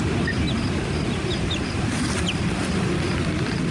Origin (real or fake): real